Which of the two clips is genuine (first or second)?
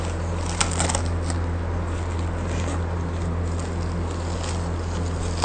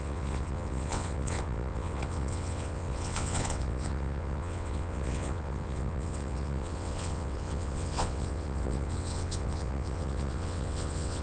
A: first